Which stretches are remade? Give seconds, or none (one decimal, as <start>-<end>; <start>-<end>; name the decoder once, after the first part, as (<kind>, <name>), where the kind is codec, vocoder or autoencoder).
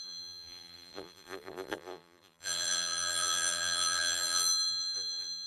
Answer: 0.0-5.5 (vocoder, BigVGAN v2)